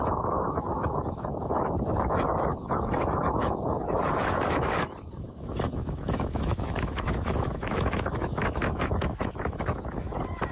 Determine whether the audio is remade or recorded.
remade